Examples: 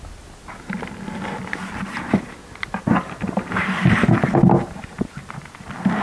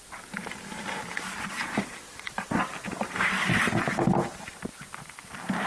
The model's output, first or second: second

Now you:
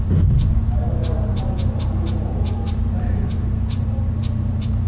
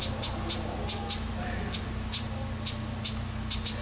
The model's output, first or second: first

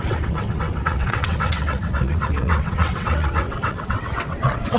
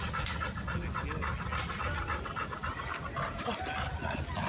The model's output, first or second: first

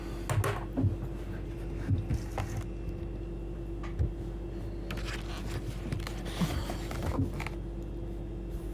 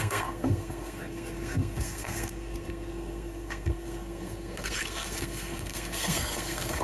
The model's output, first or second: second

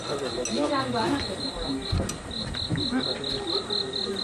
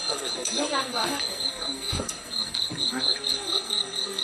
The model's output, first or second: second